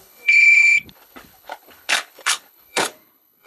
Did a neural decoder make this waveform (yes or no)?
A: yes